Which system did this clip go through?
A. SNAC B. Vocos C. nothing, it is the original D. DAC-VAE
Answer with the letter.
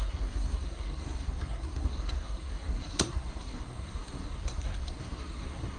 A